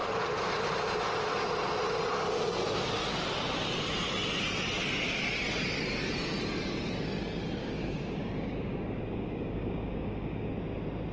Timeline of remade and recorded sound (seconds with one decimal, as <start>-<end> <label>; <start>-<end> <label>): 0.0-7.6 recorded; 7.6-10.5 remade; 10.5-11.1 recorded